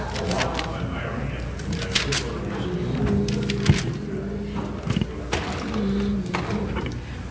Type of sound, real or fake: real